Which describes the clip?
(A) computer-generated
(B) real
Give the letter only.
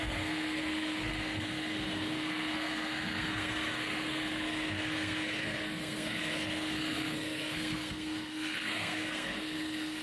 A